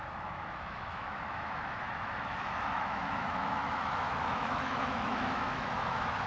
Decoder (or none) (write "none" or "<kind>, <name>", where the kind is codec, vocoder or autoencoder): autoencoder, DAC-VAE